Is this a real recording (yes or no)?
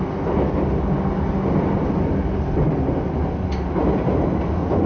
yes